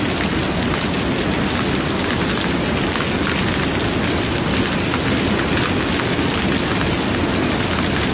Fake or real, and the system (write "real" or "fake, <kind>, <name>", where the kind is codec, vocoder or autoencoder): real